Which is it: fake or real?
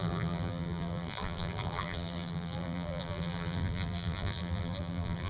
fake